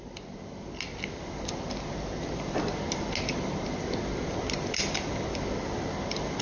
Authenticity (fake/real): real